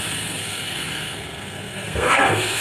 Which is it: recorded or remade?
remade